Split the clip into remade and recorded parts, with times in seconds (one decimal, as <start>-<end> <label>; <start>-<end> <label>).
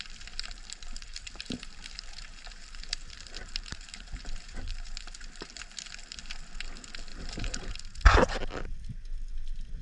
0.0-1.1 recorded; 1.1-5.5 remade; 5.5-7.1 recorded; 7.1-7.7 remade; 7.7-9.8 recorded